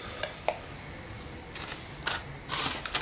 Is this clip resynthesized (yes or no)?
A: no